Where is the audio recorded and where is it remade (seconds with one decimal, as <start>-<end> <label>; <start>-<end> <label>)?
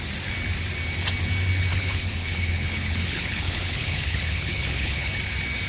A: 0.0-1.7 recorded; 1.7-5.1 remade; 5.1-5.7 recorded